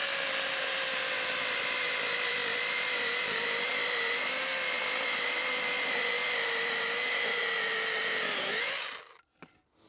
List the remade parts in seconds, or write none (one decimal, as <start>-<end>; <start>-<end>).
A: 2.4-7.4